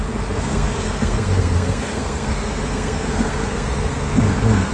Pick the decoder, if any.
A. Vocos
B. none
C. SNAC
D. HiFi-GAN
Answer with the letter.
C